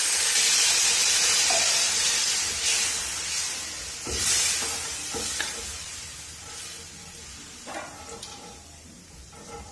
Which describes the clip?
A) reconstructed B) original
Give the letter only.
B